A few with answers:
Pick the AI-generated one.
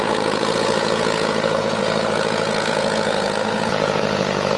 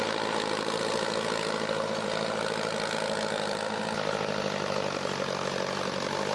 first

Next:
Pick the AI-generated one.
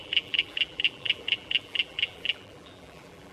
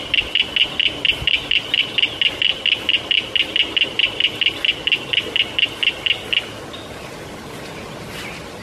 first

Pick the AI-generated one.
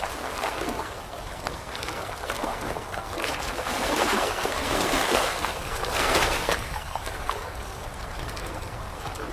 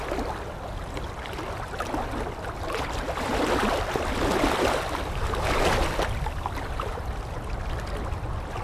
first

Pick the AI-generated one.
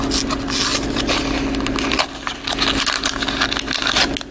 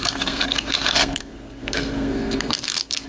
second